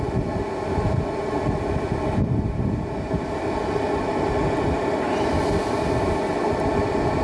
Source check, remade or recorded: recorded